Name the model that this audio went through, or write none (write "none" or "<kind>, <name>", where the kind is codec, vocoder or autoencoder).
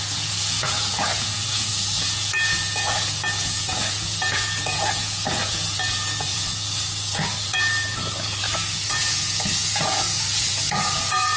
vocoder, Vocos